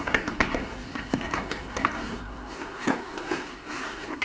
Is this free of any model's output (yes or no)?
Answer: no